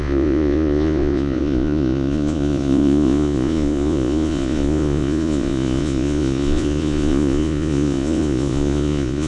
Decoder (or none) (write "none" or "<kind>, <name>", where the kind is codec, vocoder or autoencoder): vocoder, Vocos